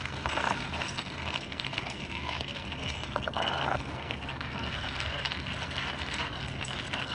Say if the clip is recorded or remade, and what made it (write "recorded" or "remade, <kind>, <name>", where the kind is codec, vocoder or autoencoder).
remade, codec, SNAC